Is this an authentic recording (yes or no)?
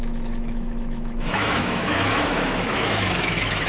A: no